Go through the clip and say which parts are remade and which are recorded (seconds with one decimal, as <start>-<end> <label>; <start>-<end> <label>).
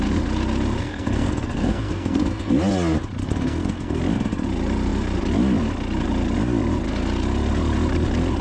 0.0-0.8 recorded; 0.8-2.5 remade; 2.5-3.2 recorded; 3.2-4.0 remade; 4.0-8.4 recorded